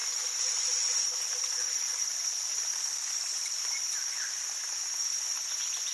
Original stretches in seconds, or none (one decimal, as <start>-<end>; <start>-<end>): 0.9-5.9

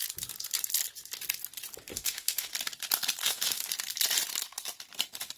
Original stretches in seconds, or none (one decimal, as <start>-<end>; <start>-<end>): 0.0-1.9; 2.5-3.2; 3.7-5.4

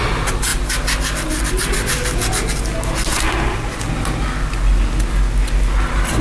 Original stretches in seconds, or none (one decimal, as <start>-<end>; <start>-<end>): 0.0-6.2